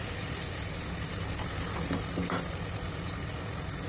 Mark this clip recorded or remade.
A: recorded